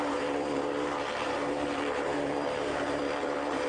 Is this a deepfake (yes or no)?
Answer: yes